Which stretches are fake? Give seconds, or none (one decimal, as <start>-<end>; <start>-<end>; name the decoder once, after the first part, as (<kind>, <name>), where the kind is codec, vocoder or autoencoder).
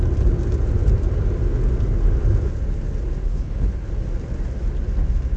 3.2-3.9 (codec, HILCodec)